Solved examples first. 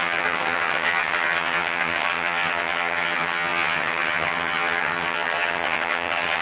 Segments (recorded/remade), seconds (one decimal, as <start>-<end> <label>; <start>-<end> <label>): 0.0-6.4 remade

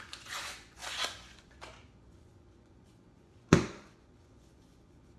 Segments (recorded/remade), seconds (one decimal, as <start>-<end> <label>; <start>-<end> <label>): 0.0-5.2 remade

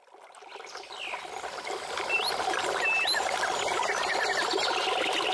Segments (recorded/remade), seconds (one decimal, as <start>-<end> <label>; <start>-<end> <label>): 0.0-5.3 recorded

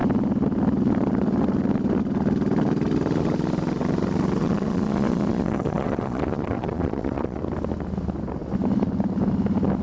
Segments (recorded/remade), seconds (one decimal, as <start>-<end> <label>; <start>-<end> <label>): 0.0-4.4 recorded; 4.4-7.4 remade; 7.4-9.8 recorded

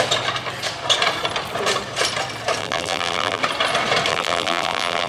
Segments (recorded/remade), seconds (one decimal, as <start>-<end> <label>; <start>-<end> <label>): 0.0-2.6 recorded; 2.6-3.4 remade; 3.4-4.1 recorded; 4.1-5.1 remade